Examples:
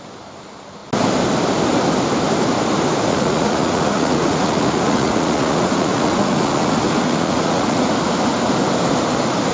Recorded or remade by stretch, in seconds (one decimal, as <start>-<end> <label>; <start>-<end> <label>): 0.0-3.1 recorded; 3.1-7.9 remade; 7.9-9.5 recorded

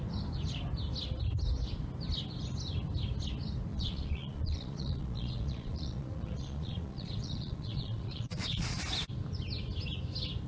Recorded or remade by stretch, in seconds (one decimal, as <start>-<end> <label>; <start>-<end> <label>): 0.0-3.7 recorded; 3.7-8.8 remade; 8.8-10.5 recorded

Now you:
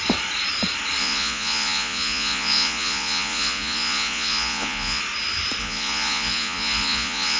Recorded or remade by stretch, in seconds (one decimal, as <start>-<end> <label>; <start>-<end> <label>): 0.0-1.0 recorded; 1.0-5.0 remade; 5.0-5.6 recorded; 5.6-7.4 remade

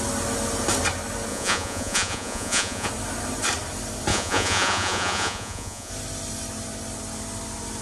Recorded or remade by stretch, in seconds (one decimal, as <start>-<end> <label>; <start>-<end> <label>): 0.0-1.3 recorded; 1.3-2.9 remade; 2.9-4.1 recorded; 4.1-5.9 remade; 5.9-7.8 recorded